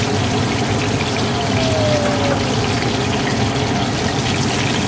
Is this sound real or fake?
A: real